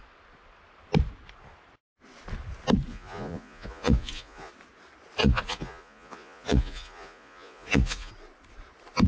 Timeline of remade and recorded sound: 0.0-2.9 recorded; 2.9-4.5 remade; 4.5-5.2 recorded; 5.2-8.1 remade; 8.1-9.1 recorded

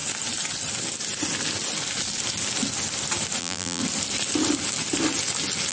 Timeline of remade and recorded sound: 0.0-3.4 recorded; 3.4-3.8 remade; 3.8-5.7 recorded

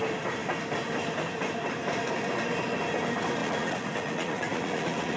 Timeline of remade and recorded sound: 0.0-3.4 recorded; 3.4-5.2 remade

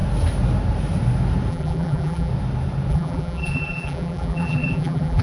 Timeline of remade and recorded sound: 0.0-1.5 recorded; 1.5-2.3 remade; 2.3-2.9 recorded; 2.9-5.2 remade

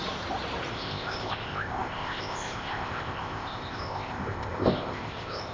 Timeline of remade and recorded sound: 0.0-0.7 recorded; 0.7-5.5 remade

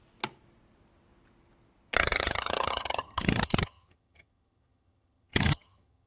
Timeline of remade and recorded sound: 0.0-2.0 recorded; 2.0-6.1 remade

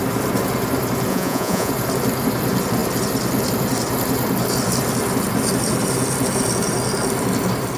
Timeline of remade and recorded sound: 0.0-1.1 recorded; 1.1-1.7 remade; 1.7-7.8 recorded